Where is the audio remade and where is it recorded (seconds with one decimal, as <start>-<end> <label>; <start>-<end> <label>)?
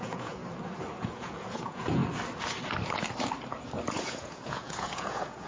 0.0-0.4 remade; 0.4-1.0 recorded; 1.0-2.0 remade; 2.0-3.9 recorded; 3.9-5.5 remade